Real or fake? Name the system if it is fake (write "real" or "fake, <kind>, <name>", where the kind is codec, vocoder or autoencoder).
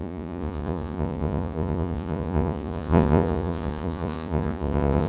fake, vocoder, Vocos